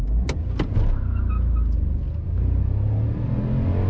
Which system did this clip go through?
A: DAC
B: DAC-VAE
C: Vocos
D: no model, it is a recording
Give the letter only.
D